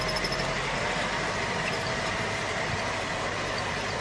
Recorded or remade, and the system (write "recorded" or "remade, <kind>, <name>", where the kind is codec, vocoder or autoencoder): recorded